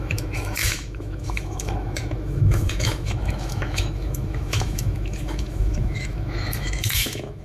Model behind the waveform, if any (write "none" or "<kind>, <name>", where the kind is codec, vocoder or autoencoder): autoencoder, DAC-VAE